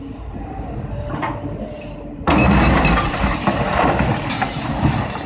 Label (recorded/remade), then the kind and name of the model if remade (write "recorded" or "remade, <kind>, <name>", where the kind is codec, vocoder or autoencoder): remade, vocoder, BigVGAN v2